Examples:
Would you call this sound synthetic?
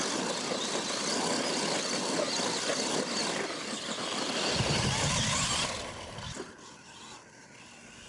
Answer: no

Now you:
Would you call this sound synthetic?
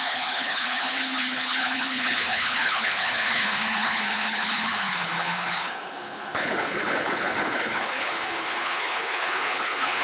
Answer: yes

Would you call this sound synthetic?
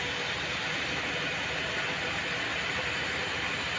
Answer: no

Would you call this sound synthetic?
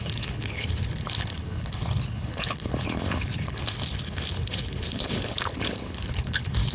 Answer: yes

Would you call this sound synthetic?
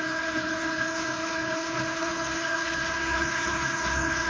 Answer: yes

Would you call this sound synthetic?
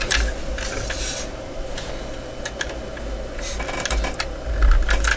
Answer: no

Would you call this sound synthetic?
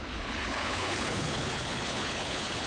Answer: yes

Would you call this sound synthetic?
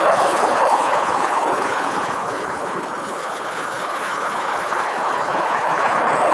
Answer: yes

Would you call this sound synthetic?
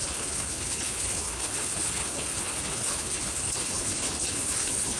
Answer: yes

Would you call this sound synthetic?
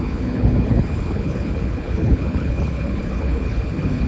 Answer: yes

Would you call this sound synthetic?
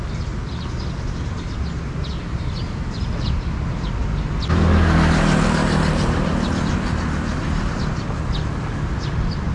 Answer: no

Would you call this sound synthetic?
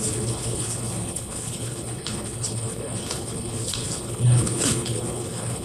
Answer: yes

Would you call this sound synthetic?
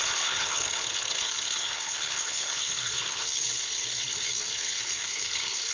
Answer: yes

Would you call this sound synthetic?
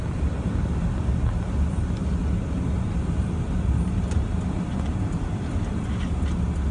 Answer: no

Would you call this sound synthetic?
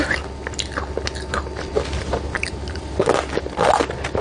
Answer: no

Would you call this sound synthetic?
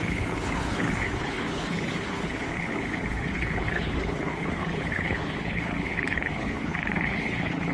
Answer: yes